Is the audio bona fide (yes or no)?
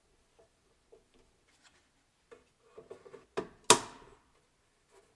yes